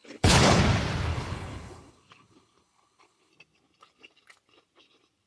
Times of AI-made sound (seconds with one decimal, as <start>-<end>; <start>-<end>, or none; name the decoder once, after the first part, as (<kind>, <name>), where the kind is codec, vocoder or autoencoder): 0.0-0.6 (codec, HILCodec); 1.1-3.3